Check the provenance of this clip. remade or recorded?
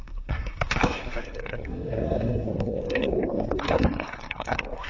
remade